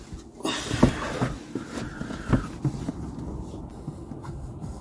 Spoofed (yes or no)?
no